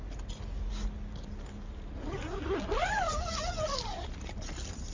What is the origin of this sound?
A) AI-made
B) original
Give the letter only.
B